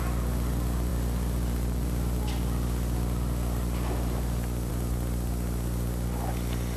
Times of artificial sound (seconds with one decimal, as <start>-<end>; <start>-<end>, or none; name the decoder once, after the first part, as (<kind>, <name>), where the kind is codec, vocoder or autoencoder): none